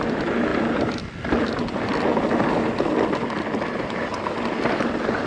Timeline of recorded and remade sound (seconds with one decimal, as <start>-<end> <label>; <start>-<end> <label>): 0.0-5.3 recorded